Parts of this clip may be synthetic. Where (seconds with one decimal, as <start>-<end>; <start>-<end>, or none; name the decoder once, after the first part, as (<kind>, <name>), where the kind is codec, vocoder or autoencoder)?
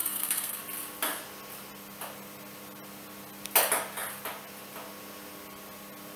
0.0-0.6 (codec, SNAC)